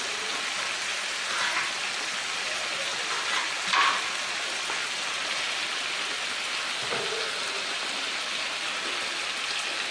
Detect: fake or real real